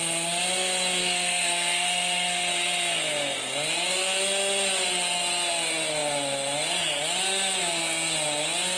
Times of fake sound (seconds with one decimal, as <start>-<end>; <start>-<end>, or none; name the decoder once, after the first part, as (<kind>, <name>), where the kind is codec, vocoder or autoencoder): 1.0-2.5 (codec, SNAC)